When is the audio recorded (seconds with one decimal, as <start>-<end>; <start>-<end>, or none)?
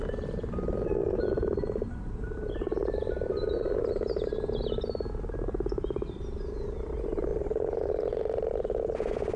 0.0-1.0; 3.9-7.3; 8.1-9.4